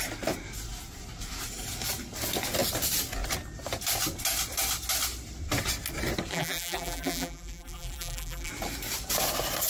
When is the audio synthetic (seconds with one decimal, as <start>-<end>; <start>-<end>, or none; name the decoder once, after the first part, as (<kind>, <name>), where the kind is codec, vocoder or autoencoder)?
6.3-8.5 (vocoder, BigVGAN v2)

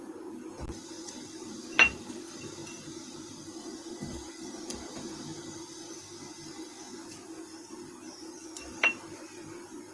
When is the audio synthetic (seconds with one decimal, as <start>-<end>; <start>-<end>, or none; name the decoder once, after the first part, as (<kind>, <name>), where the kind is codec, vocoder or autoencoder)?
0.0-9.9 (vocoder, BigVGAN v2)

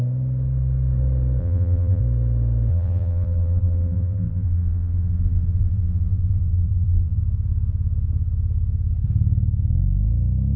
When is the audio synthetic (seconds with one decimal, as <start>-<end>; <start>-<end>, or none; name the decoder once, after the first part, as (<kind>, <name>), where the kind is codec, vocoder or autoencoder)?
1.4-2.0 (vocoder, BigVGAN v2); 2.7-7.2

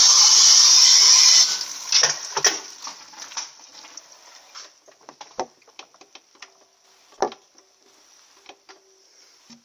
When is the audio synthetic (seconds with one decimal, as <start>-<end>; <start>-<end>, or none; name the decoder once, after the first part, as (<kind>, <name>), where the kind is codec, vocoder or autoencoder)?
none

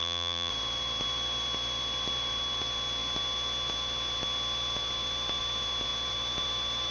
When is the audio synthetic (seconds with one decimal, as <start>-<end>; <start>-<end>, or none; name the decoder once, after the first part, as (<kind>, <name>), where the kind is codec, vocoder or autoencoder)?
0.0-0.5 (vocoder, BigVGAN v2)